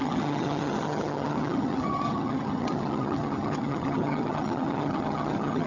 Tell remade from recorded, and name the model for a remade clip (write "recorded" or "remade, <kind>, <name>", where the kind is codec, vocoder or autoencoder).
remade, vocoder, HiFi-GAN